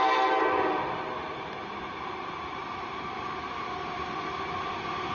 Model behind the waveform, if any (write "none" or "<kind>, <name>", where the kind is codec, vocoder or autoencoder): none